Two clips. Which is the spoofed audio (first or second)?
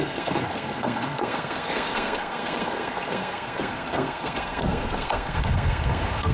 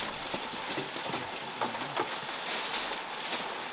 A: first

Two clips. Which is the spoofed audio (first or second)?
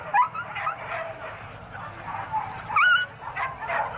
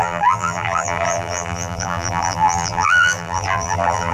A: second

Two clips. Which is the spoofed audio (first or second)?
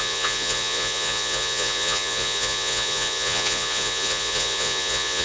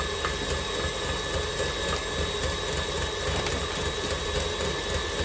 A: first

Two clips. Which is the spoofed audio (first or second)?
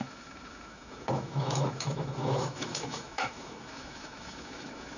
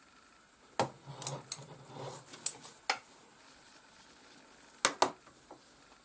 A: first